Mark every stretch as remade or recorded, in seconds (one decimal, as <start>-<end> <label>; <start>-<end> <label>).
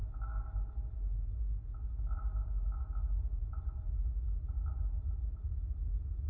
0.0-6.3 recorded